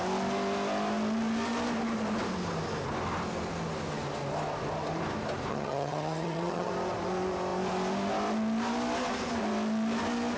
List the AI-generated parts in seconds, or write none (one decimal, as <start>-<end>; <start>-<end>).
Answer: 5.5-6.7